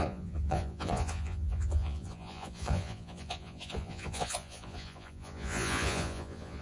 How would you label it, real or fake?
fake